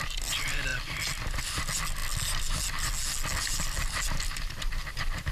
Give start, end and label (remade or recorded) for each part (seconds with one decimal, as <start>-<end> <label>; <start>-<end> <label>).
0.0-5.3 recorded